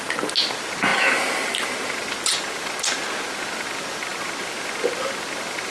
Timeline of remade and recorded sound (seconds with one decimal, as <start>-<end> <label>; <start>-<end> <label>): 0.0-5.7 recorded